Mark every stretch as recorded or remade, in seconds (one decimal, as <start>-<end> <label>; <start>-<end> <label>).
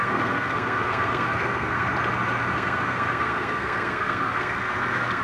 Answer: 0.0-1.9 remade; 1.9-2.5 recorded; 2.5-5.2 remade